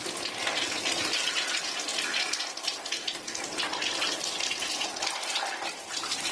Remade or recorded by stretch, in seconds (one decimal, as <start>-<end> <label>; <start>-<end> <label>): 0.0-6.3 recorded